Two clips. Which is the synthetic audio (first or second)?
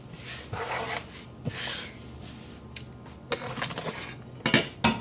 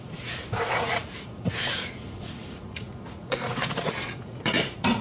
second